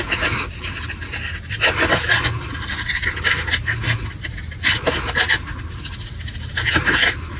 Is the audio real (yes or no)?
yes